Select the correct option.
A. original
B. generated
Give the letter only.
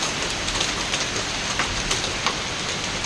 A